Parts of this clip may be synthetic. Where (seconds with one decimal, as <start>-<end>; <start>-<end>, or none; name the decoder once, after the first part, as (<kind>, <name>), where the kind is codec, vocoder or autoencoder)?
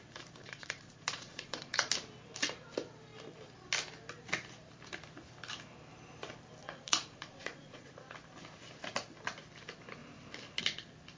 0.4-1.9 (vocoder, Vocos); 6.6-7.9